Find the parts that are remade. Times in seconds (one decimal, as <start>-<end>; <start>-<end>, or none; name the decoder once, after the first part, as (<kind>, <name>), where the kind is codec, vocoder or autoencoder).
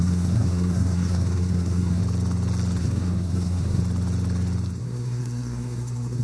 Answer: 0.0-2.0 (codec, SNAC); 2.8-3.8; 4.8-6.2